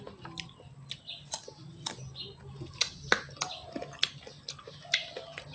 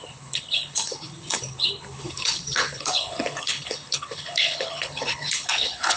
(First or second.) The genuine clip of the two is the first